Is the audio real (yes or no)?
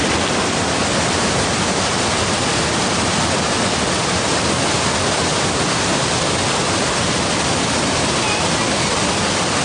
yes